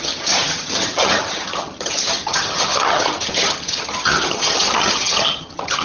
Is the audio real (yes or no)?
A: no